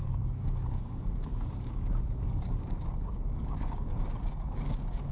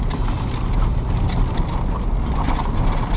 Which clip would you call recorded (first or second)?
second